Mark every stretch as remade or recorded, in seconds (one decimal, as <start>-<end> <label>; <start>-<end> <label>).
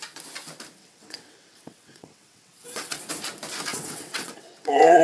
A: 0.0-0.8 recorded; 0.8-3.0 remade; 3.0-3.7 recorded; 3.7-5.0 remade